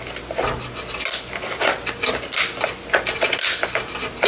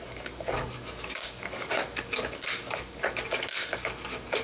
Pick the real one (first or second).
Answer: first